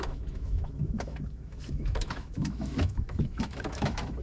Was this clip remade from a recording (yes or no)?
yes